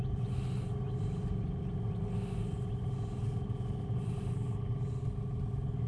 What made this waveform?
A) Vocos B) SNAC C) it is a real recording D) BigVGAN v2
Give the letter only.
C